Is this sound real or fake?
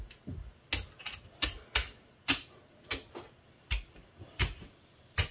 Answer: real